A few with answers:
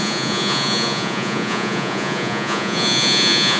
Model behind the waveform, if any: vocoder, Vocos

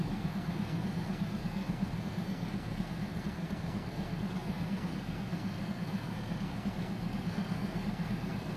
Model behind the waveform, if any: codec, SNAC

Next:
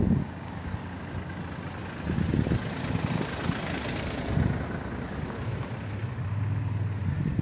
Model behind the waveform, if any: none